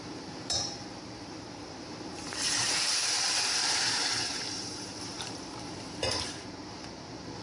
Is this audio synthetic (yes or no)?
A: yes